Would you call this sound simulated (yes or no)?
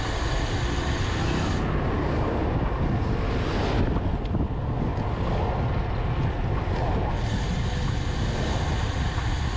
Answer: no